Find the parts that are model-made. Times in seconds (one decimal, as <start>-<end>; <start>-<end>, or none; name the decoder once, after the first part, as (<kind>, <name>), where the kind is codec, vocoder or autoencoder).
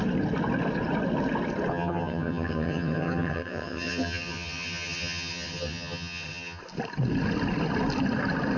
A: 1.7-6.6 (vocoder, HiFi-GAN)